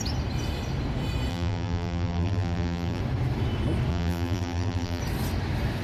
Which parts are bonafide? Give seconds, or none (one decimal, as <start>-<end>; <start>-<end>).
0.0-1.3; 3.0-3.9; 5.0-5.8